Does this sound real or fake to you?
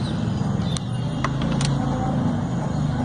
real